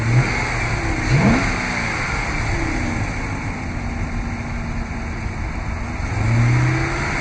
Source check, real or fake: real